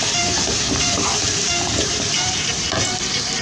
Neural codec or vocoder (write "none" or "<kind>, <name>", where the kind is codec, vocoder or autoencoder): vocoder, BigVGAN v2